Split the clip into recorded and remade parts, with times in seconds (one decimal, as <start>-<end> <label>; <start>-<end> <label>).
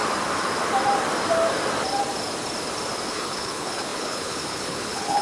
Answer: 0.0-3.1 recorded; 3.1-5.2 remade